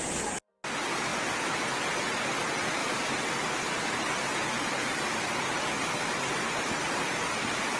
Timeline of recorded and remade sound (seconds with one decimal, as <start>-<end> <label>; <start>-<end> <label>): 0.0-1.1 recorded; 1.1-1.6 remade; 1.6-2.8 recorded; 2.8-7.8 remade